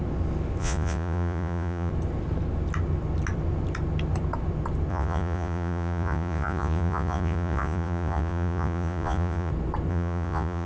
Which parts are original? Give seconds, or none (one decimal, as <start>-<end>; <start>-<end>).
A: 0.0-0.6; 1.9-4.9; 9.5-9.9